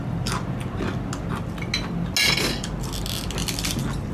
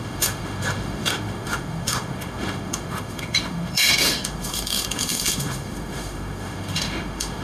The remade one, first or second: second